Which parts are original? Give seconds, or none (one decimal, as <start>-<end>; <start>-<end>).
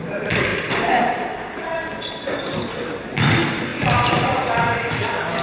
0.0-5.4